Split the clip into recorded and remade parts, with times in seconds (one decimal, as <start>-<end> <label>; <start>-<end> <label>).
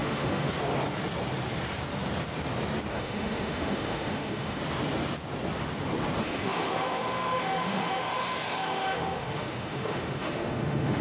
0.0-0.5 remade; 0.5-2.9 recorded; 2.9-4.6 remade; 4.6-6.2 recorded; 6.2-11.0 remade